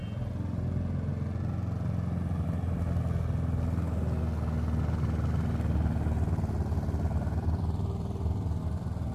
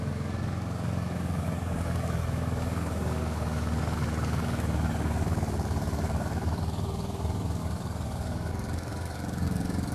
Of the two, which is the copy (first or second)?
second